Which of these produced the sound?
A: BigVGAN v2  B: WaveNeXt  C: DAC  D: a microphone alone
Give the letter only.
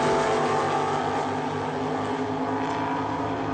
D